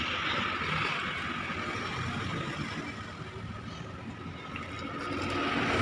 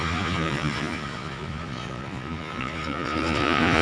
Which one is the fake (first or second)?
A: second